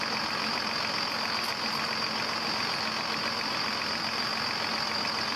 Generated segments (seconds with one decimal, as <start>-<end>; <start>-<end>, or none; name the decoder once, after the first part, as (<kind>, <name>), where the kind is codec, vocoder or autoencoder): none